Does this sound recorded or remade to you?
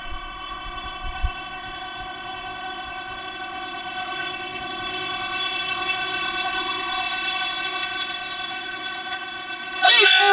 remade